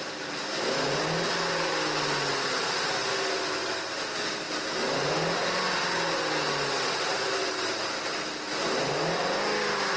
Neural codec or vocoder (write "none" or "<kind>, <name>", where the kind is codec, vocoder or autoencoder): none